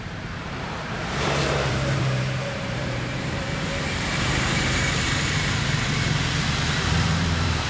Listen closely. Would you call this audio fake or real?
fake